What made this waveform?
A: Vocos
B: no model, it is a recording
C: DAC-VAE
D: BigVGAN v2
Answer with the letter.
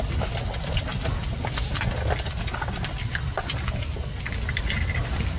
B